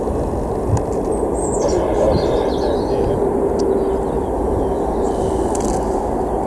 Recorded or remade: recorded